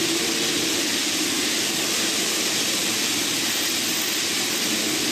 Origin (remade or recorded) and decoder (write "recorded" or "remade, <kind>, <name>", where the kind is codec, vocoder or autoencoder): recorded